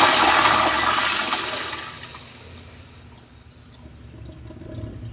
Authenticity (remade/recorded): recorded